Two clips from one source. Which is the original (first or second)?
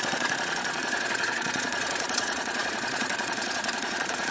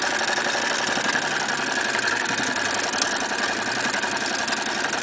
second